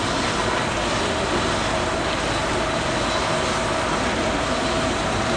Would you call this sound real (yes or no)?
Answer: yes